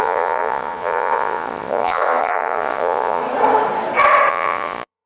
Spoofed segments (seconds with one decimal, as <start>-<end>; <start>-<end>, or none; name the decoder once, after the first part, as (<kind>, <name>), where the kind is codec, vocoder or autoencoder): 0.0-3.2 (vocoder, Vocos); 4.3-5.1